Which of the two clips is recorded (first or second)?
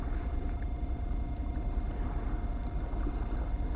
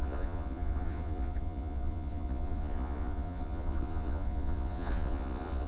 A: first